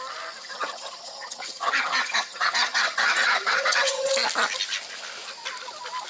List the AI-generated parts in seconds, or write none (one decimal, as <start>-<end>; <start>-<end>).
0.4-4.1